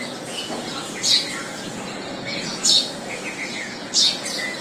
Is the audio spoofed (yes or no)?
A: yes